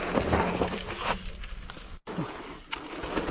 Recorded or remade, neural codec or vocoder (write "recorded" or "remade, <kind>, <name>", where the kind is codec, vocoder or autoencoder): recorded